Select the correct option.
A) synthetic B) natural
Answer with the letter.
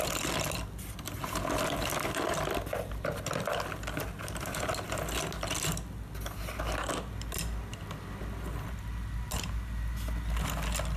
B